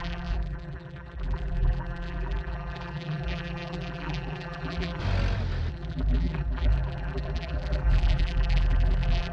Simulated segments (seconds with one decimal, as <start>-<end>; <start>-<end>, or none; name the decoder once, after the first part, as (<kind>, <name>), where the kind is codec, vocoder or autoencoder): 0.0-5.0 (vocoder, BigVGAN v2); 5.7-9.3